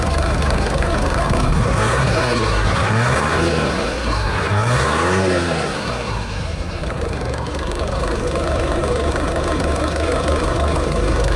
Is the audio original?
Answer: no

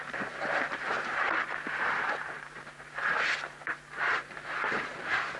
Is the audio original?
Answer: no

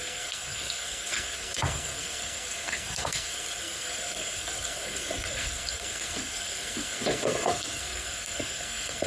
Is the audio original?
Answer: no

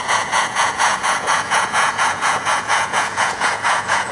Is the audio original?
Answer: no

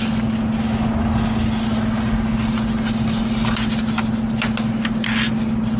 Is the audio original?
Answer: yes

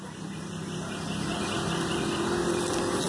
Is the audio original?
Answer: yes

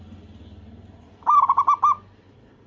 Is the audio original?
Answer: yes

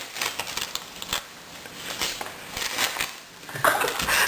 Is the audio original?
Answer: yes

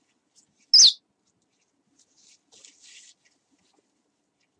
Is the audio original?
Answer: yes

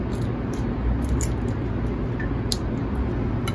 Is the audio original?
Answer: yes